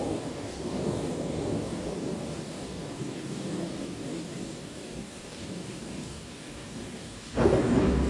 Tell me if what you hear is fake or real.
fake